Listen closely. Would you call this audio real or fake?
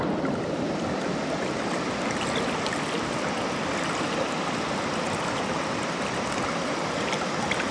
real